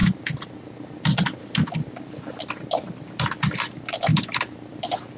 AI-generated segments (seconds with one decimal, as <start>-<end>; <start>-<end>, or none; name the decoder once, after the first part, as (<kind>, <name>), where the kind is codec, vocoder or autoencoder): none